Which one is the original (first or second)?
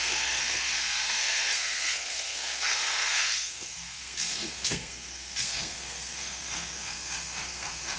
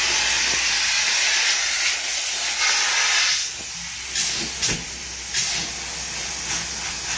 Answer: second